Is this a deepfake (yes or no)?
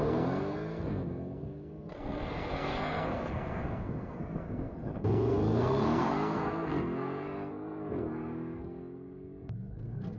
yes